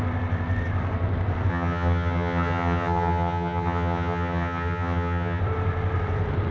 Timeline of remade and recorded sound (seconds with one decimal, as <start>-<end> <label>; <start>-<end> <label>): 0.0-1.5 recorded; 1.5-5.4 remade; 5.4-6.5 recorded